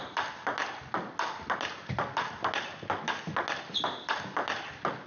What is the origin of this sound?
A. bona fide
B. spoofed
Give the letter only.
A